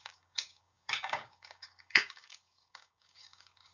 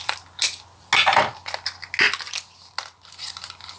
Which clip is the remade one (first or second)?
first